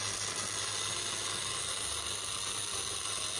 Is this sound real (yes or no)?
yes